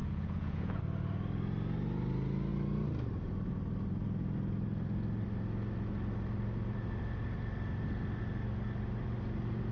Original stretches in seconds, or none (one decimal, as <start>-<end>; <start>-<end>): 0.8-9.7